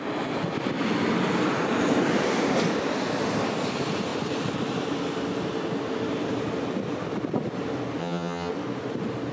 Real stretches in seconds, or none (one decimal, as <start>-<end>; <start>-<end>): 0.0-8.0; 8.5-9.3